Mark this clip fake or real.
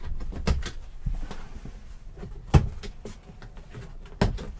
real